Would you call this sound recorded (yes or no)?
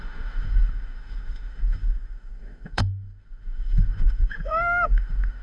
no